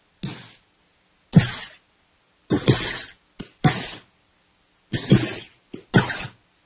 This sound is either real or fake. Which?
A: real